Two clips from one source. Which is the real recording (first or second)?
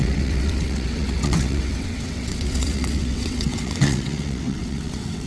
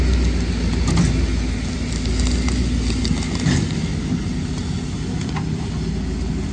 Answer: second